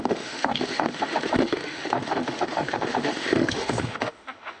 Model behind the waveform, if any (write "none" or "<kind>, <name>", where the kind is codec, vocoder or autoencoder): autoencoder, DAC-VAE